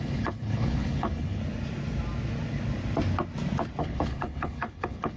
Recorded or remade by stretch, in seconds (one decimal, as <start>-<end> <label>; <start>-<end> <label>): 0.0-1.4 remade; 1.4-3.8 recorded; 3.8-5.2 remade